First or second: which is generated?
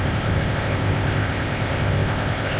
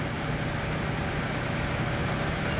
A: first